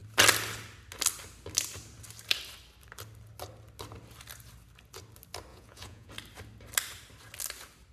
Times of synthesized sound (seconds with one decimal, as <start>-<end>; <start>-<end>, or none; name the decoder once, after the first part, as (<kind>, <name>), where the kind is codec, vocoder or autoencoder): 5.5-6.1 (vocoder, Vocos)